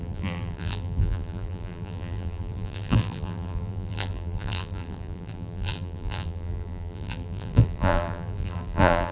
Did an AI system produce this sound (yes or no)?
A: yes